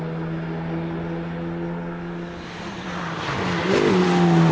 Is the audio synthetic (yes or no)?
no